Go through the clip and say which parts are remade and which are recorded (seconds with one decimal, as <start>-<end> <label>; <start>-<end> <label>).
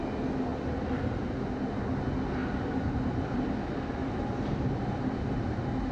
0.0-0.5 recorded; 0.5-1.8 remade; 1.8-2.4 recorded; 2.4-3.5 remade; 3.5-4.0 recorded; 4.0-5.9 remade